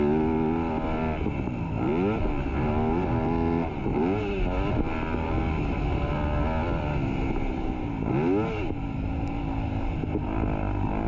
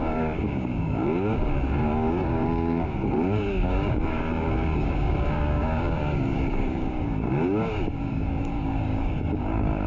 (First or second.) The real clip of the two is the first